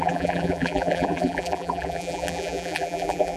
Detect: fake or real fake